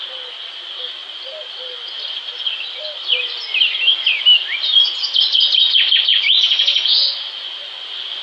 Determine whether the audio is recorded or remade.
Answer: recorded